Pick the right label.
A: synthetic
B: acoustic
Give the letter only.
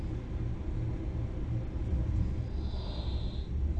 B